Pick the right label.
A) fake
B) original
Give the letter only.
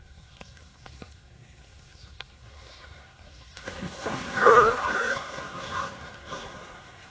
A